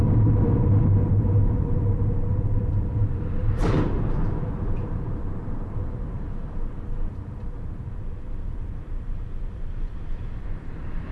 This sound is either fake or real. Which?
fake